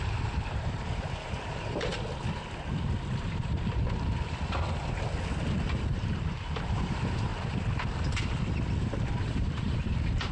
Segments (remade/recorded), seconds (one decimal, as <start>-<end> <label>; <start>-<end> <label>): 0.0-1.9 remade; 1.9-5.4 recorded; 5.4-7.3 remade; 7.3-9.2 recorded; 9.2-10.3 remade